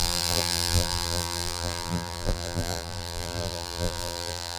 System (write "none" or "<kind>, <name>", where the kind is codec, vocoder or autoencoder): vocoder, BigVGAN v2